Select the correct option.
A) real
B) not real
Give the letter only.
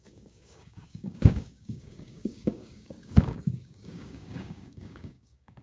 B